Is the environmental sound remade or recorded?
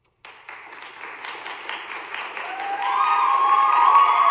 recorded